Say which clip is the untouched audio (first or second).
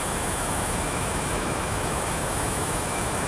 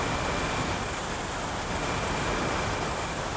second